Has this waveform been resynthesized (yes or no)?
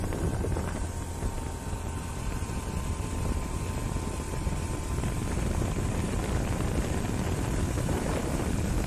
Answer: yes